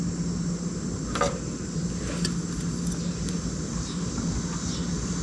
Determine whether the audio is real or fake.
real